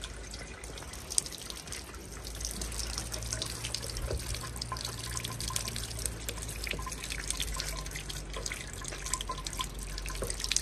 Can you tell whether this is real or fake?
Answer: real